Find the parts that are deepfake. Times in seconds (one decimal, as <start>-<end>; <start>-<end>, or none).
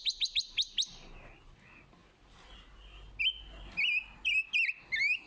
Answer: none